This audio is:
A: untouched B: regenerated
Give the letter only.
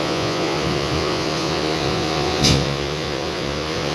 B